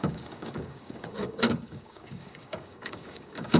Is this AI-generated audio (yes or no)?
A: yes